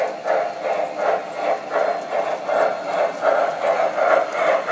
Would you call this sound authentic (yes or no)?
yes